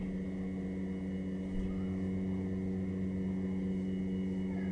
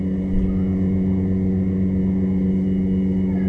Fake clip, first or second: second